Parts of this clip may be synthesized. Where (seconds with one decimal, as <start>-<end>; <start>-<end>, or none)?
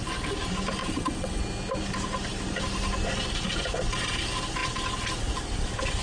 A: 0.8-1.4